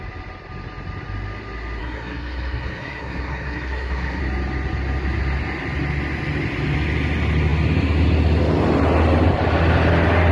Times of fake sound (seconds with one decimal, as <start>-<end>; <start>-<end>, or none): 1.8-4.2